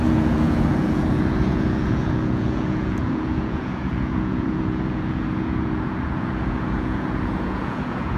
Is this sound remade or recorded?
remade